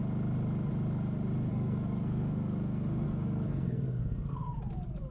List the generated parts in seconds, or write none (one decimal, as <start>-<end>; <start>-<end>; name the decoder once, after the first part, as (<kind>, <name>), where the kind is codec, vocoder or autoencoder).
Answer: 1.5-4.6 (codec, SNAC)